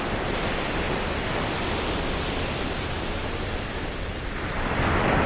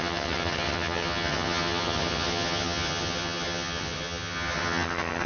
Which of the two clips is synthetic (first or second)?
second